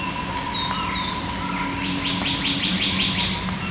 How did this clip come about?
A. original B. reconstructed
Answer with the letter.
A